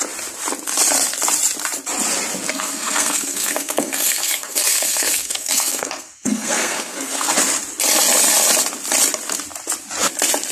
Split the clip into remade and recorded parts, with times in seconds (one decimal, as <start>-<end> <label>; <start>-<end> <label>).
0.0-2.5 recorded; 2.5-7.3 remade; 7.3-10.5 recorded